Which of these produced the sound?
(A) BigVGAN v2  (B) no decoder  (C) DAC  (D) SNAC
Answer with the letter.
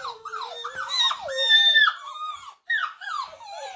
B